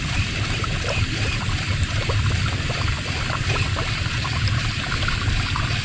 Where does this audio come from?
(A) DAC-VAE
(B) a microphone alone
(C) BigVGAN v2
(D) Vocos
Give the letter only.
B